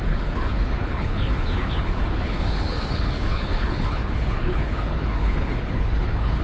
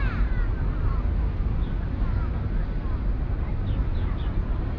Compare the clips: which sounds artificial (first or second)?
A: first